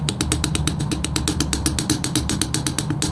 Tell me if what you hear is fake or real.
real